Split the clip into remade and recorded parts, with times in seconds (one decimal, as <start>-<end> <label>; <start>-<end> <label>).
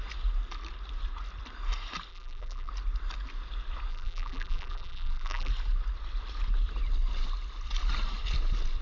0.0-2.1 recorded; 2.1-2.7 remade; 2.7-3.9 recorded; 3.9-5.5 remade; 5.5-8.8 recorded